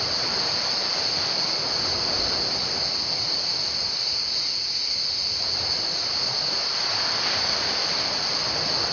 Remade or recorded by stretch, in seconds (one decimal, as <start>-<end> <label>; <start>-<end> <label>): 0.0-5.9 recorded; 5.9-7.1 remade; 7.1-8.9 recorded

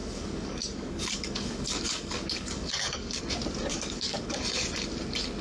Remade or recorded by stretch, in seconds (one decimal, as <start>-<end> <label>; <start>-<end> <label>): 0.0-3.2 remade; 3.2-3.7 recorded; 3.7-4.4 remade; 4.4-5.4 recorded

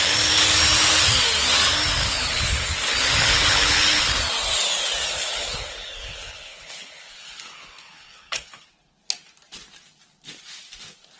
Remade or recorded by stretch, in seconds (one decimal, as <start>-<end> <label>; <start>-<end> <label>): 0.0-2.0 recorded; 2.0-4.2 remade; 4.2-5.2 recorded; 5.2-8.7 remade; 8.7-11.2 recorded

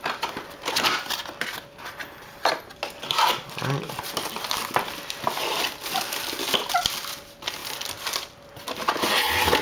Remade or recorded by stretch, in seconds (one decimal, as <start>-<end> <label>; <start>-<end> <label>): 0.0-9.6 recorded